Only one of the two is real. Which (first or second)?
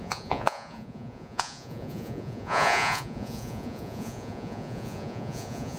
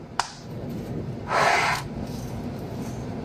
second